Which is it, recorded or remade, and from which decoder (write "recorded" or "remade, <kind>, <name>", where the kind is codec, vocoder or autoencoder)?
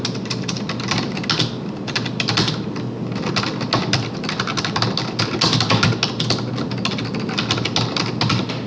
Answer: recorded